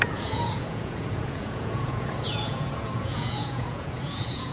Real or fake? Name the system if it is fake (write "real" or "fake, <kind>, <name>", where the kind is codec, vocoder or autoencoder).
fake, vocoder, Vocos